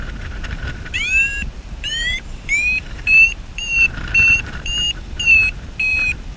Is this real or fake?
fake